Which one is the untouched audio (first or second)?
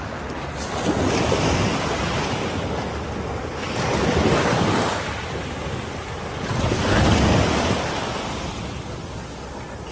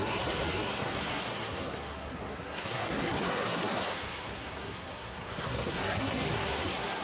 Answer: first